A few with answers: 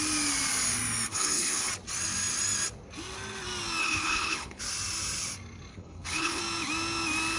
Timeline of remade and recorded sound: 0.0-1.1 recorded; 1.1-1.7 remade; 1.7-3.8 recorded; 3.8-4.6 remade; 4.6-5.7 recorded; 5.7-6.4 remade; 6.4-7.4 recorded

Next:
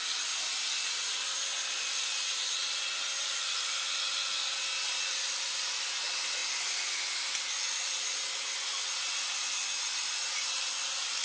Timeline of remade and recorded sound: 0.0-11.2 recorded

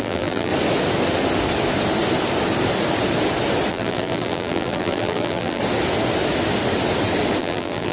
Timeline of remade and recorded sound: 0.0-0.5 remade; 0.5-3.7 recorded; 3.7-5.6 remade; 5.6-7.4 recorded; 7.4-7.9 remade

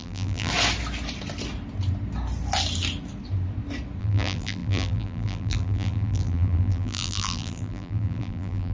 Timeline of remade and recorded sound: 0.0-0.5 remade; 0.5-4.0 recorded; 4.0-8.7 remade

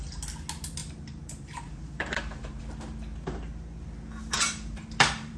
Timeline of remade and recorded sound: 0.0-0.8 recorded; 0.8-2.6 remade; 2.6-4.2 recorded; 4.2-5.4 remade

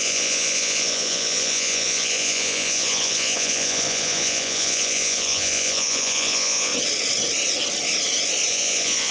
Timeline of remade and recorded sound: 0.0-6.7 remade; 6.7-8.5 recorded; 8.5-9.1 remade

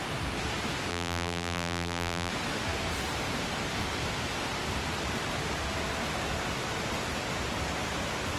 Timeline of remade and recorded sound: 0.0-0.9 recorded; 0.9-2.3 remade; 2.3-8.4 recorded